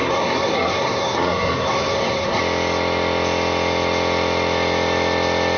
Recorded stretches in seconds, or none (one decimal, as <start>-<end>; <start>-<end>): 2.4-5.6